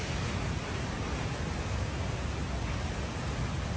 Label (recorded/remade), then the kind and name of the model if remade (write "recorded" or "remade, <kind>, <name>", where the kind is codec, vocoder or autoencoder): recorded